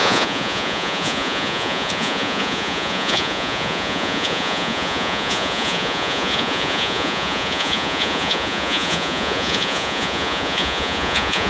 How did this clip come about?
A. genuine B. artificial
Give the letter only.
B